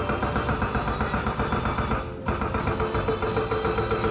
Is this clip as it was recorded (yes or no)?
yes